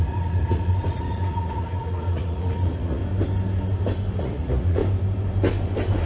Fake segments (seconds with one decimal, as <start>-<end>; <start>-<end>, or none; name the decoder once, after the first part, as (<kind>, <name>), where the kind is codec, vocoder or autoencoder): 0.0-3.0 (vocoder, Vocos); 4.2-4.8